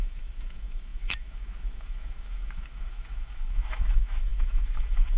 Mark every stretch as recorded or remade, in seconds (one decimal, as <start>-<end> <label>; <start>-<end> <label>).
0.0-5.2 remade